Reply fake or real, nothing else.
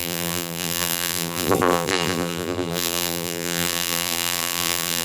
fake